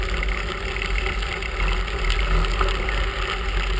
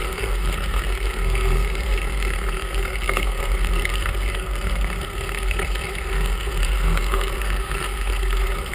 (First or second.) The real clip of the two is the first